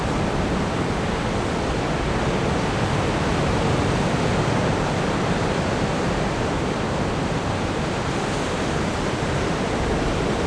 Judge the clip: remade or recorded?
recorded